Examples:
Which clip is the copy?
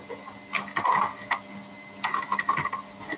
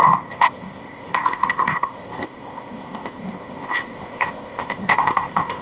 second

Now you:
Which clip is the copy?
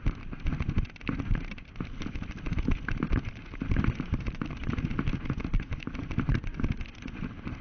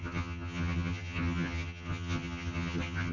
second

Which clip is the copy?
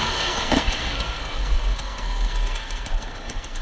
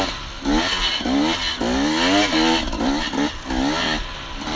first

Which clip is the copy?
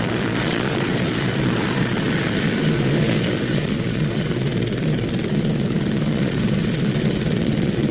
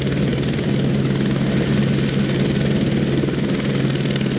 first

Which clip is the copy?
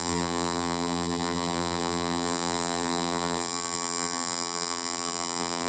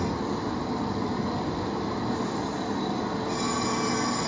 first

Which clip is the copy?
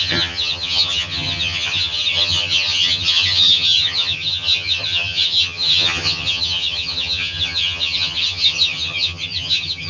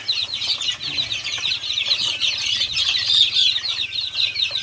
first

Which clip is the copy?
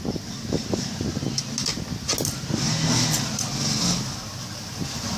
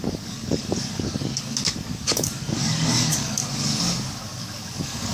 second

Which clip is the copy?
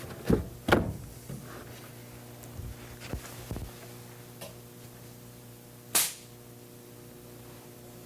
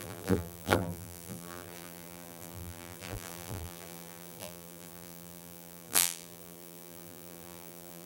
second